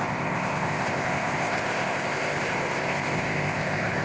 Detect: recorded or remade remade